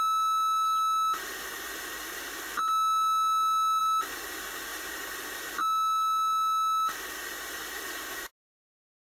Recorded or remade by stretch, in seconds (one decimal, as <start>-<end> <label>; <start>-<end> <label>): 0.0-9.0 recorded